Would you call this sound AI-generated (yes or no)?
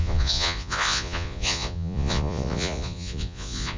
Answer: yes